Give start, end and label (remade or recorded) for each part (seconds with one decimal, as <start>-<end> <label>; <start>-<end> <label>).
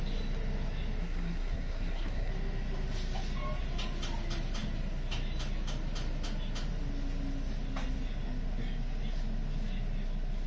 0.0-1.0 recorded; 1.0-2.3 remade; 2.3-10.5 recorded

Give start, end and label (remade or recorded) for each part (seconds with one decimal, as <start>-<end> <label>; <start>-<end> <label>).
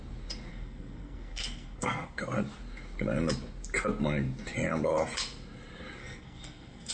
0.0-0.5 recorded; 0.5-2.2 remade; 2.2-6.0 recorded; 6.0-6.9 remade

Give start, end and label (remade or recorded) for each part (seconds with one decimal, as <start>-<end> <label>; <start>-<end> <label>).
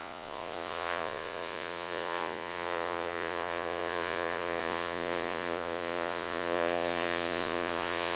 0.0-8.2 remade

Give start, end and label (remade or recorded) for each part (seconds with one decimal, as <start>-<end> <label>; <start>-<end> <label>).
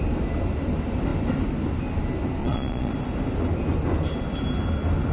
0.0-2.4 recorded; 2.4-2.9 remade; 2.9-5.1 recorded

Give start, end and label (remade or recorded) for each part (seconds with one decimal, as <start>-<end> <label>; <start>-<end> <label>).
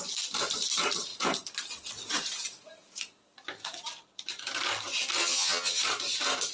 0.0-5.2 recorded; 5.2-5.8 remade; 5.8-6.5 recorded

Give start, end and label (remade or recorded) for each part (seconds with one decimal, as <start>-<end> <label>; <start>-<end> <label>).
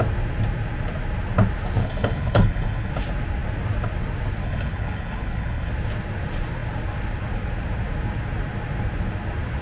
0.0-1.8 recorded; 1.8-2.9 remade; 2.9-4.4 recorded; 4.4-5.7 remade; 5.7-9.6 recorded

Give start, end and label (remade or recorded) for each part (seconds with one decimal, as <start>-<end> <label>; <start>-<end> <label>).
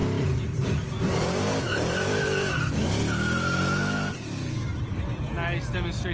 0.0-2.7 remade; 2.7-6.1 recorded